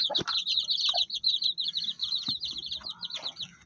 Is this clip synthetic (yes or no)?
no